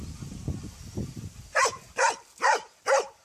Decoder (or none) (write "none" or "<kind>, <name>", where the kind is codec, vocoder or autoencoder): none